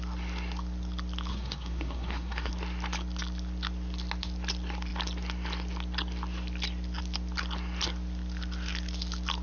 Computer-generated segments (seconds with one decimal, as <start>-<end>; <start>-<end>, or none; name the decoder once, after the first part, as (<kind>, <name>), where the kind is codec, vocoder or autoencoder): 1.3-2.5 (codec, SNAC)